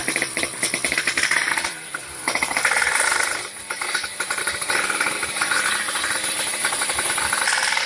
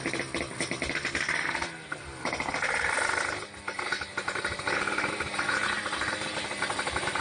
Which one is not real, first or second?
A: first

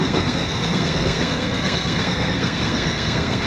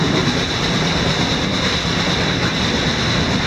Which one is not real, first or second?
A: first